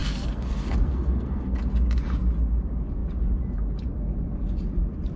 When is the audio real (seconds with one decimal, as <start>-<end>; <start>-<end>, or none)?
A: 1.6-5.2